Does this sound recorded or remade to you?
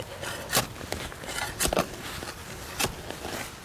recorded